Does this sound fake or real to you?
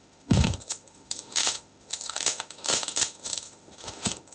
fake